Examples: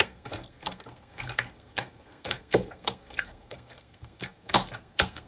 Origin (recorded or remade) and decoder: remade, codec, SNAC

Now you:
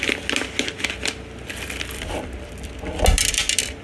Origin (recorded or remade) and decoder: recorded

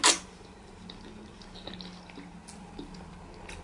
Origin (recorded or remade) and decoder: recorded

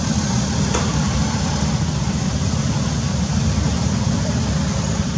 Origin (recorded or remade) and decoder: recorded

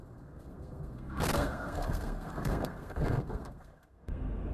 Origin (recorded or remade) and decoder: remade, codec, SNAC